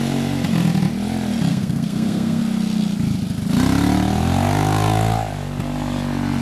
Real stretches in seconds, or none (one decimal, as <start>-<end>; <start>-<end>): 0.0-1.5; 2.4-6.4